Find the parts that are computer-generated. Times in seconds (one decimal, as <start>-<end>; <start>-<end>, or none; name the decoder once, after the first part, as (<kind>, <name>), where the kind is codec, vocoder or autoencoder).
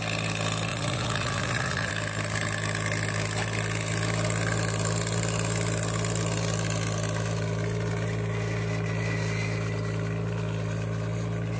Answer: 0.7-1.9 (vocoder, Vocos)